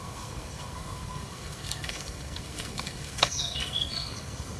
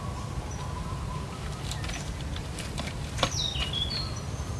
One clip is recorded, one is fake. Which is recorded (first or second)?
second